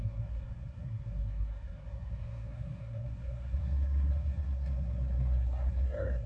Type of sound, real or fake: fake